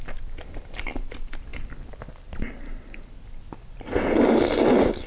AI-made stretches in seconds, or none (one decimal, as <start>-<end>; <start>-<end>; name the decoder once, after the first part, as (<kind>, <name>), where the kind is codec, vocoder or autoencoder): none